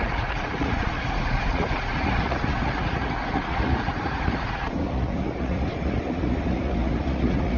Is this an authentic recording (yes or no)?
no